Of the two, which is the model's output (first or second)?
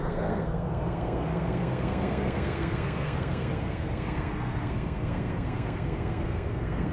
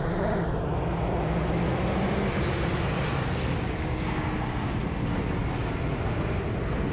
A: first